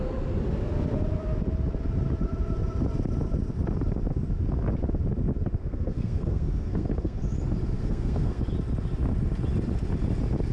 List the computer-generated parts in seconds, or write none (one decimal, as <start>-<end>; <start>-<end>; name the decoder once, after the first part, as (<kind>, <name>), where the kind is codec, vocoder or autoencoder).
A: 5.6-7.2 (codec, SNAC); 7.8-8.4